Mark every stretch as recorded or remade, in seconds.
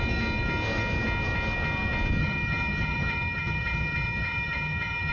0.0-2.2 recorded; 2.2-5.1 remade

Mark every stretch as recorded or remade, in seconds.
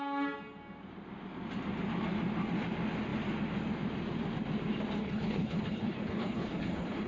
0.0-5.0 recorded; 5.0-7.1 remade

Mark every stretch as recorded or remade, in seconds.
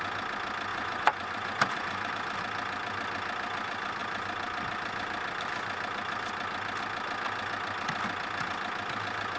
0.0-0.7 recorded; 0.7-2.1 remade; 2.1-9.4 recorded